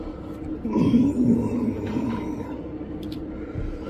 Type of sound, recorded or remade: recorded